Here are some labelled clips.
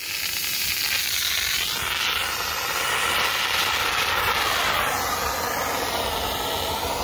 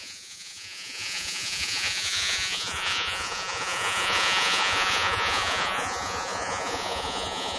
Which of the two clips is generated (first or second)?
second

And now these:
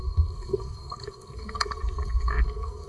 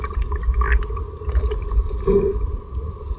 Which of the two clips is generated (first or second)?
first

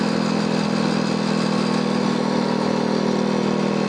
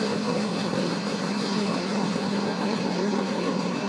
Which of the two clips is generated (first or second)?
second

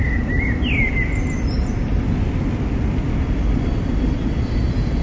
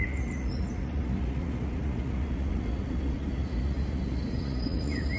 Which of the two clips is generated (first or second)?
second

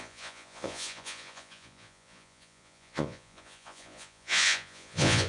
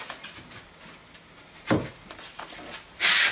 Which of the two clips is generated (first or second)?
first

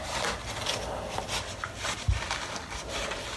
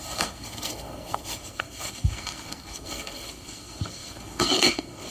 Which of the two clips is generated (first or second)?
second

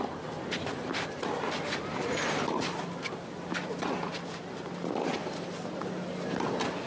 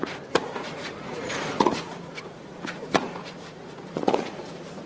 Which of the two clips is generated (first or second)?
second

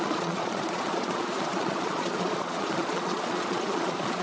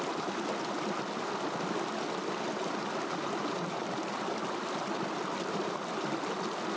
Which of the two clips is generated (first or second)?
first